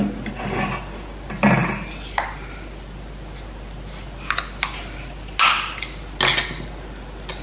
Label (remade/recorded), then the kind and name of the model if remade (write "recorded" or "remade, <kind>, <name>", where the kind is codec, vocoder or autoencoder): recorded